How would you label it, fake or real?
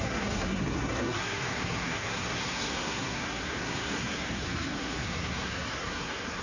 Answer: fake